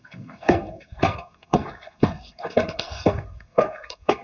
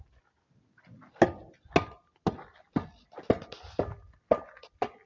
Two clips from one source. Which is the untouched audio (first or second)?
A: second